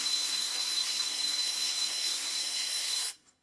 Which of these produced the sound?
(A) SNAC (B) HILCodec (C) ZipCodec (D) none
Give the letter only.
A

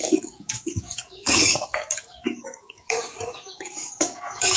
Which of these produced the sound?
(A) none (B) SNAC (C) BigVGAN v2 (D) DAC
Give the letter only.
D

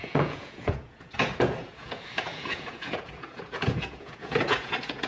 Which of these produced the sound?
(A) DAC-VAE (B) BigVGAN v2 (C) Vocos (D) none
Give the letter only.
C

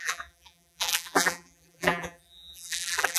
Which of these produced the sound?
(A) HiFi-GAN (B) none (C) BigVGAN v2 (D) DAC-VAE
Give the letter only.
C